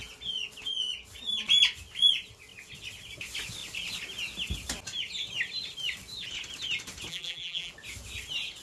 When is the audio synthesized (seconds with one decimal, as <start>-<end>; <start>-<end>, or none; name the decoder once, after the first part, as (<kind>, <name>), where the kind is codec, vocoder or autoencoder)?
7.1-7.7 (vocoder, BigVGAN v2)